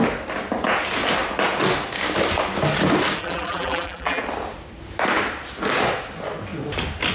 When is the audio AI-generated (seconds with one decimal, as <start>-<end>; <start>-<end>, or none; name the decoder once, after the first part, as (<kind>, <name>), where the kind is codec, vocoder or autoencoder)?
3.2-4.2 (vocoder, BigVGAN v2)

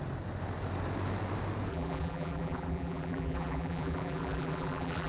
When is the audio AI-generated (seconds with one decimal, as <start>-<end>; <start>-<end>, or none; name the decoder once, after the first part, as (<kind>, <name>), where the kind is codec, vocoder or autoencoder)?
1.7-5.1 (vocoder, BigVGAN v2)

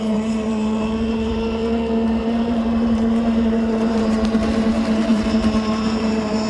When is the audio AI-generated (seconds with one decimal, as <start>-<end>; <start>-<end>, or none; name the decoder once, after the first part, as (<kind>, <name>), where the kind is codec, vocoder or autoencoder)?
0.0-1.6 (vocoder, BigVGAN v2); 2.2-6.5

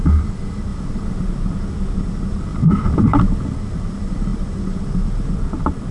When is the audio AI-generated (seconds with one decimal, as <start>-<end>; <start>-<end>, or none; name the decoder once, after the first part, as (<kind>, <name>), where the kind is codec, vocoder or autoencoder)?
0.0-0.7 (vocoder, BigVGAN v2); 1.3-2.5; 3.8-5.9

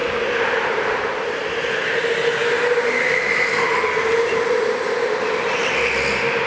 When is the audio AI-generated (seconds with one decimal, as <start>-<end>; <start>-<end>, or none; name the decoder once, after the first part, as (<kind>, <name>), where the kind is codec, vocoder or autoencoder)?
none